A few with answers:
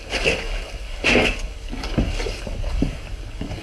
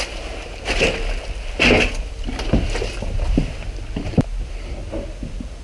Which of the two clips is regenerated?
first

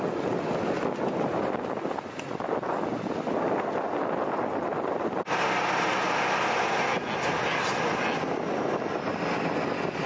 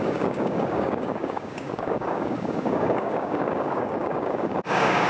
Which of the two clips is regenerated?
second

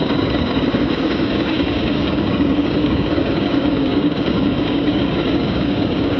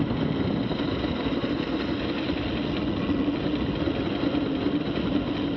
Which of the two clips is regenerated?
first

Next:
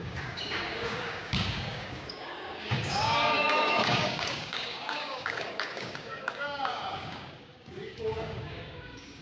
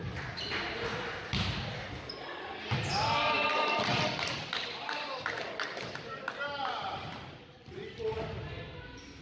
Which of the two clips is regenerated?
first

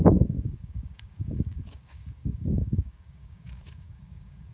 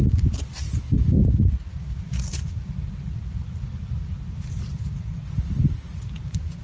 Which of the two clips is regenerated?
first